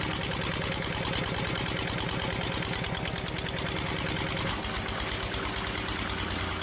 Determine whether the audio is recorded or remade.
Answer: recorded